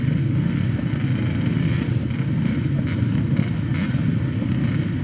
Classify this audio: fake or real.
real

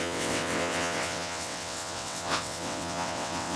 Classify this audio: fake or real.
fake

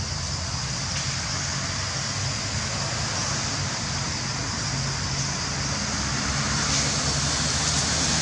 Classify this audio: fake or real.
real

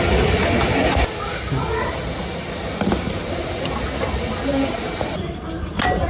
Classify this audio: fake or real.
real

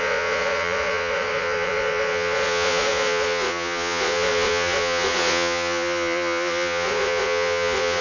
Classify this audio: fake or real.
fake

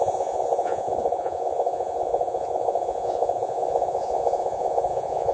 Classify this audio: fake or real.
fake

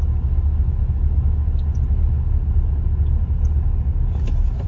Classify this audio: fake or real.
real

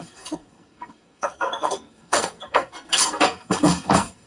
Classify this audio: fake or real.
fake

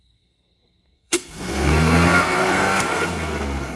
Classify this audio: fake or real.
fake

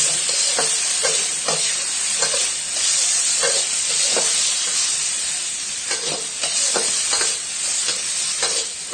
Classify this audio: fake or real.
real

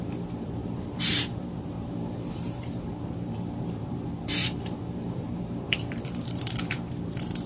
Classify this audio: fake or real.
fake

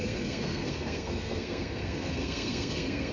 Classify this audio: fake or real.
fake